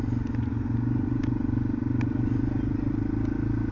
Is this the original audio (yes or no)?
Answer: yes